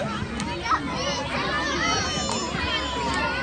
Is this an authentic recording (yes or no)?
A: yes